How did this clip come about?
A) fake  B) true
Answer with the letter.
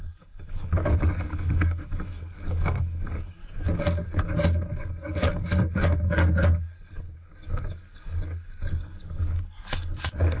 A